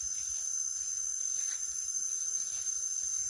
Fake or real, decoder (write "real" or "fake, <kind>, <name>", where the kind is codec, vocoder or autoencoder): real